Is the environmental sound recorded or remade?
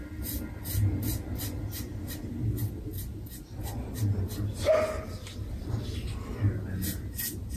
recorded